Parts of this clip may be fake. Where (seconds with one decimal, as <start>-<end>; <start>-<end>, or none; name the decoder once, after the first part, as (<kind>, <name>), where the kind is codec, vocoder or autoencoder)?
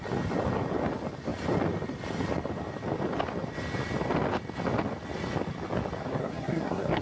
6.2-7.0 (codec, SNAC)